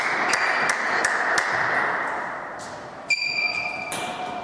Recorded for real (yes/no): yes